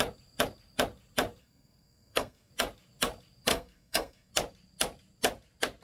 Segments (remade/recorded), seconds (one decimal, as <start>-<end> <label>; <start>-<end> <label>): 0.0-1.4 recorded; 1.4-2.5 remade; 2.5-3.5 recorded; 3.5-4.3 remade; 4.3-5.8 recorded